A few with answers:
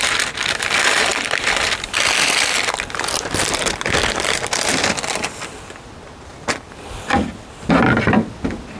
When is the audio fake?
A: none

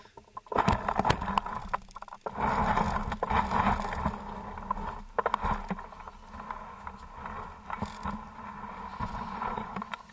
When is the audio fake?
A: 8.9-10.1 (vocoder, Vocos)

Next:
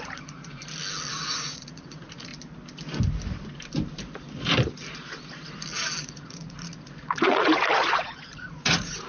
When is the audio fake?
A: 0.0-0.6 (vocoder, Vocos); 1.1-2.3; 6.0-9.1

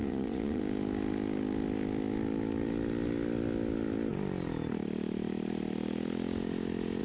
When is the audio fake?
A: 0.0-0.6 (vocoder, Vocos)

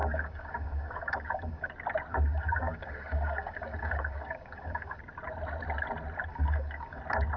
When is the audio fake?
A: 0.0-1.7 (codec, DAC); 2.1-5.0; 6.3-7.0